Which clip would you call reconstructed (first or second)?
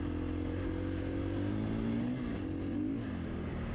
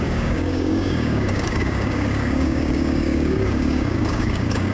second